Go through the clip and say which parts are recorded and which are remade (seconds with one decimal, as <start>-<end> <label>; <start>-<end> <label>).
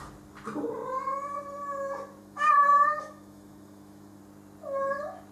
0.0-2.2 recorded; 2.2-4.2 remade; 4.2-5.3 recorded